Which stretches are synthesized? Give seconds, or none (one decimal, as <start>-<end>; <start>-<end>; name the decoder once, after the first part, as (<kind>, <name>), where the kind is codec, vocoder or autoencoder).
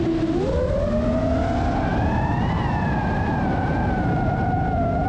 none